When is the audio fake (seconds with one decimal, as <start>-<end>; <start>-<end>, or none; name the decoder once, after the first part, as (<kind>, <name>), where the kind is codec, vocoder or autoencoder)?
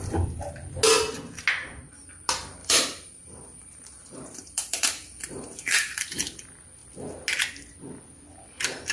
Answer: 2.6-6.2 (vocoder, BigVGAN v2)